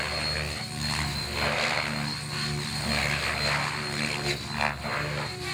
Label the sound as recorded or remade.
recorded